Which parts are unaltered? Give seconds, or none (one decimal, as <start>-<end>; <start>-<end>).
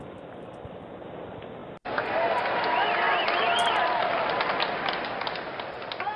0.0-6.2